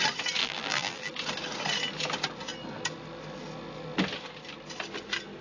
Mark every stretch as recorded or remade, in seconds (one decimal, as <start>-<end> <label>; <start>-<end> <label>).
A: 0.0-0.4 recorded; 0.4-1.1 remade; 1.1-5.4 recorded